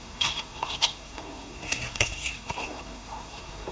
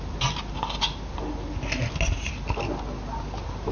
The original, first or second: second